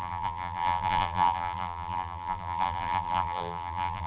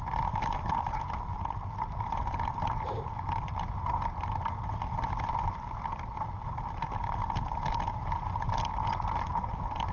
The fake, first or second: first